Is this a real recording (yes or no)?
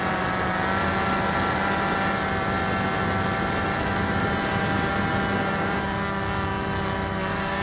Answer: yes